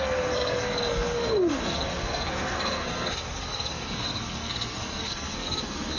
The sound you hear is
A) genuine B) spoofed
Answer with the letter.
B